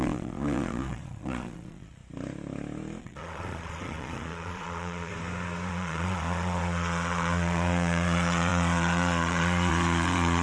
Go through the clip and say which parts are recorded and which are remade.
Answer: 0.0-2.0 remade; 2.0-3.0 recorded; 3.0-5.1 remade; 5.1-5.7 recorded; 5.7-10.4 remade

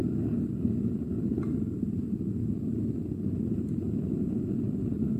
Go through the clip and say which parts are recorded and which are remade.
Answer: 0.0-5.2 recorded

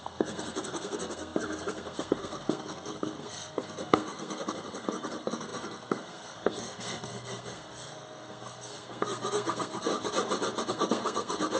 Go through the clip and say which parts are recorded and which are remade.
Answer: 0.0-9.9 remade; 9.9-10.7 recorded; 10.7-11.6 remade

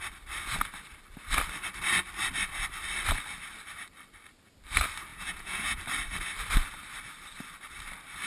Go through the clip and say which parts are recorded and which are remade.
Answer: 0.0-5.1 recorded; 5.1-5.8 remade; 5.8-8.3 recorded

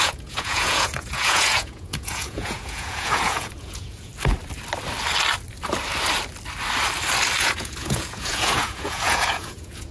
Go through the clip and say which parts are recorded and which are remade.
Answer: 0.0-4.1 remade; 4.1-7.4 recorded; 7.4-9.9 remade

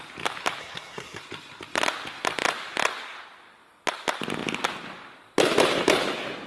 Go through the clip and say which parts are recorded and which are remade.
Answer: 0.0-0.6 recorded; 0.6-1.2 remade; 1.2-6.5 recorded

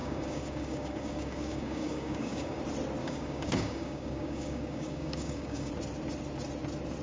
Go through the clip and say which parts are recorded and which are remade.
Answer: 0.0-2.6 remade; 2.6-3.0 recorded; 3.0-5.7 remade; 5.7-7.0 recorded